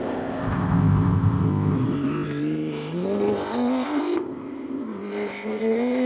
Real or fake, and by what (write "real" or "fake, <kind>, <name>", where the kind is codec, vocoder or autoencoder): fake, codec, ZipCodec